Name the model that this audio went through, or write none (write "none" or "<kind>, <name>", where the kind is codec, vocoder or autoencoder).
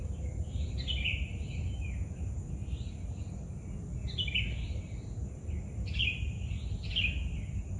none